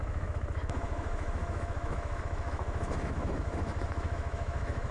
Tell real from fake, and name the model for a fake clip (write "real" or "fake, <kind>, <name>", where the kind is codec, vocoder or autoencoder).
fake, autoencoder, DAC-VAE